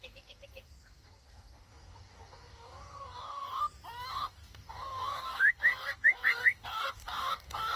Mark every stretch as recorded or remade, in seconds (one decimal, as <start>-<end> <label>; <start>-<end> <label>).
0.0-3.6 remade; 3.6-4.1 recorded; 4.1-7.8 remade